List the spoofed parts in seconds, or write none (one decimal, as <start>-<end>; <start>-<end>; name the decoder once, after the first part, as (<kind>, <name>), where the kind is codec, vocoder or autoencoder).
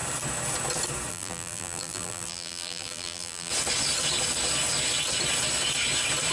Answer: 1.1-3.5 (vocoder, BigVGAN v2)